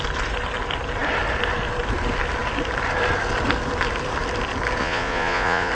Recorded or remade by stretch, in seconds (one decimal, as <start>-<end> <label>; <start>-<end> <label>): 0.0-4.8 recorded; 4.8-5.7 remade